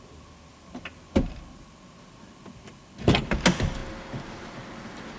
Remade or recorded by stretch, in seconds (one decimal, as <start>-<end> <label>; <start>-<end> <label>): 0.0-5.2 recorded

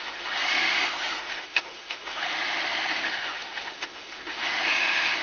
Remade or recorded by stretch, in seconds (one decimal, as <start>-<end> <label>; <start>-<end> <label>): 0.0-5.2 remade

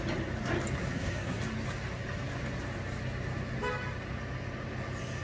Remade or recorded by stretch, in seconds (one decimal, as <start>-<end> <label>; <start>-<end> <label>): 0.0-0.8 recorded; 0.8-1.4 remade; 1.4-5.2 recorded